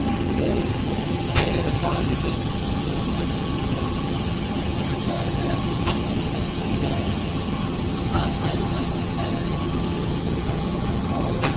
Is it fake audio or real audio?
fake